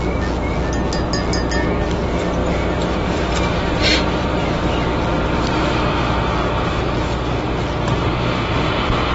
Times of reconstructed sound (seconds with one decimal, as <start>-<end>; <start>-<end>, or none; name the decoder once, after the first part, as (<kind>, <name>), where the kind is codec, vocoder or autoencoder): 2.4-4.6 (vocoder, BigVGAN v2)